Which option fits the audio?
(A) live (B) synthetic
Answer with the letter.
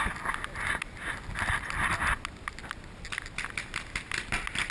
A